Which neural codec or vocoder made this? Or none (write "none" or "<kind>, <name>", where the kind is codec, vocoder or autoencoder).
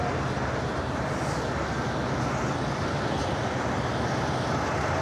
none